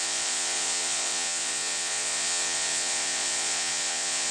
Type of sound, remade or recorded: remade